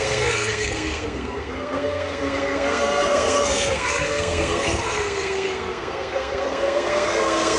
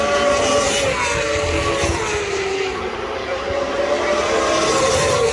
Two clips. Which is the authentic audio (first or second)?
second